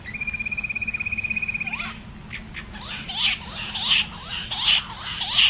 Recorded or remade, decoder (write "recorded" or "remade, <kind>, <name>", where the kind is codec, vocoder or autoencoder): recorded